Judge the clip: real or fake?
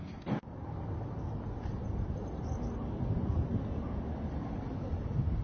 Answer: real